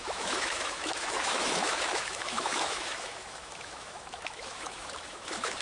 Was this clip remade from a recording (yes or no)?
yes